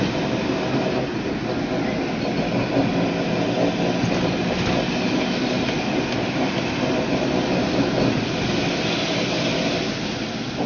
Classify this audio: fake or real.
real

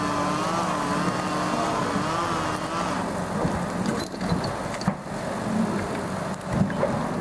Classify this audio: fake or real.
real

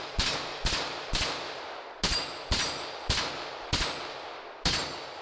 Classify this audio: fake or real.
real